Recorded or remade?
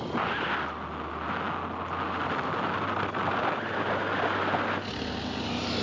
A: recorded